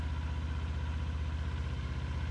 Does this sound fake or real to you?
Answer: real